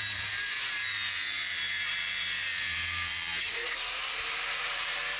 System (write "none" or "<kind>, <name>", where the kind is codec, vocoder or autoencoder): vocoder, BigVGAN v2